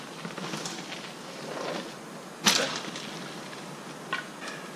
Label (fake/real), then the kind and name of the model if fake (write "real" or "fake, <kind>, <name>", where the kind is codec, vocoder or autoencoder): real